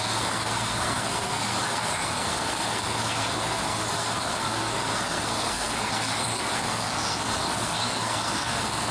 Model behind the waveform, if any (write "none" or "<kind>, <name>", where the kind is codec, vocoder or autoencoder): codec, SNAC